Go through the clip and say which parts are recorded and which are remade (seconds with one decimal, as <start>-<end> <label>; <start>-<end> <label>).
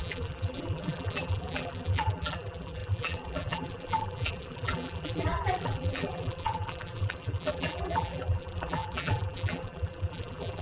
0.0-10.6 remade